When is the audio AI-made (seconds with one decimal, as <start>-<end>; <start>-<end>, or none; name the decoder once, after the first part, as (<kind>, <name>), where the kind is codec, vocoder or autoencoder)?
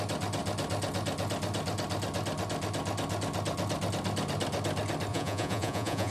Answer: 5.1-6.1 (vocoder, Vocos)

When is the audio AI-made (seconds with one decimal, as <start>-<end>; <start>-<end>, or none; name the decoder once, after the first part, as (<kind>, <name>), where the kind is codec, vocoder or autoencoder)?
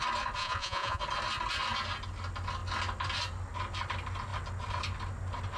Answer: 0.4-1.0 (vocoder, Vocos)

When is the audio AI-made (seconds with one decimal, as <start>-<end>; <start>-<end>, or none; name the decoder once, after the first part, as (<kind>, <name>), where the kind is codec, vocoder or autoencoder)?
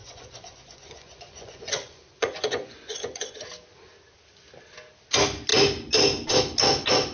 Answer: 0.0-3.3 (vocoder, Vocos)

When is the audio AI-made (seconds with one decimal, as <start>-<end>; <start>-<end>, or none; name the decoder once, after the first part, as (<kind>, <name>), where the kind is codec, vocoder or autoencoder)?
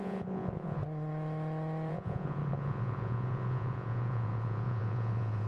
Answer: 0.0-0.8 (vocoder, Vocos); 1.9-5.5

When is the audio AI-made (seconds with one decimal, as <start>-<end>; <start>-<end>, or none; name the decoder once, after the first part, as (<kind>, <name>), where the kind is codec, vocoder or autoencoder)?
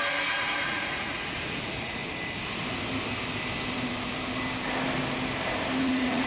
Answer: 0.0-2.0 (vocoder, Vocos); 5.8-6.3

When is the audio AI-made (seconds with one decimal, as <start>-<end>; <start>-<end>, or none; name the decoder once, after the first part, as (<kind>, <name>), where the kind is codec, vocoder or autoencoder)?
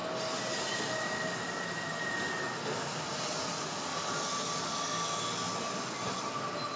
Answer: none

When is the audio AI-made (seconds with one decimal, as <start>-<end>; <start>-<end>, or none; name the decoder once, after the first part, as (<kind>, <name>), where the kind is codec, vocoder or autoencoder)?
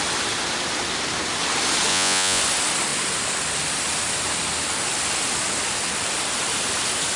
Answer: 1.9-2.4 (vocoder, Vocos)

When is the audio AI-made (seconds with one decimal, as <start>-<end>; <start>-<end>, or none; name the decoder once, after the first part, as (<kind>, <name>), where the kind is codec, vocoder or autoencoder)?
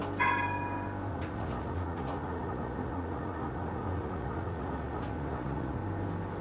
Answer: 1.1-5.8 (vocoder, Vocos)